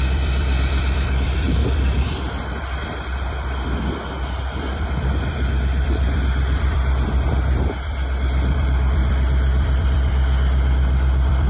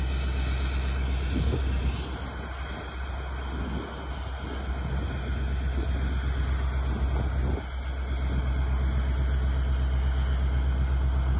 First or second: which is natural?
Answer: second